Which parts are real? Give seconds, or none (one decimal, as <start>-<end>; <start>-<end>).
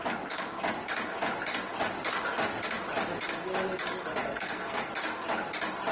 0.0-4.1; 4.9-5.9